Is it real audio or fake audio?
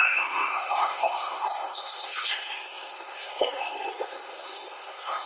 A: fake